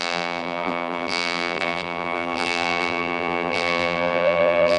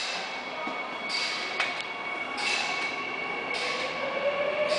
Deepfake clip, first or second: first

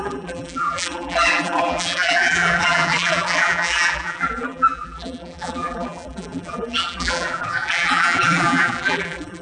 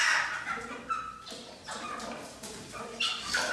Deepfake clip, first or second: first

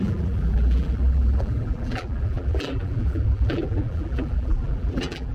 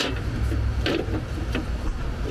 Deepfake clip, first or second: first